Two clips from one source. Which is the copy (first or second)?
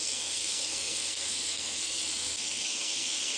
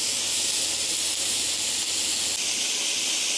first